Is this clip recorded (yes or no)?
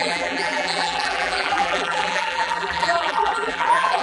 no